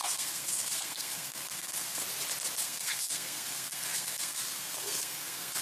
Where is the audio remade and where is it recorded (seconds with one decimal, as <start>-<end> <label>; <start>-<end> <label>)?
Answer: 0.0-2.0 remade; 2.0-2.6 recorded; 2.6-5.6 remade